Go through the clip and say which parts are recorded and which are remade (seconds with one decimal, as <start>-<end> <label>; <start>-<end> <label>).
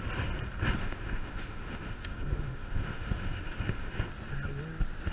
0.0-0.8 recorded; 0.8-3.9 remade; 3.9-5.1 recorded